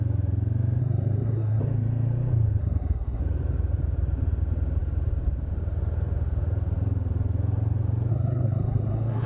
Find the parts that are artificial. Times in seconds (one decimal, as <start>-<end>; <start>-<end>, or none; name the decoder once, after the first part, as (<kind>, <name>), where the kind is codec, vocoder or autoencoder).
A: 0.8-1.6 (codec, SNAC); 2.6-3.2; 8.1-9.3